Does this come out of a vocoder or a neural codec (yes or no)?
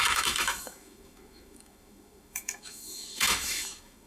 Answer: yes